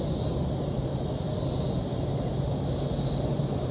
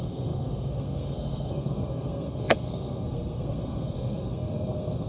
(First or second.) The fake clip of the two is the second